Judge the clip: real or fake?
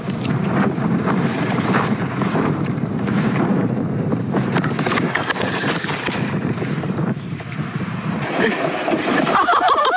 fake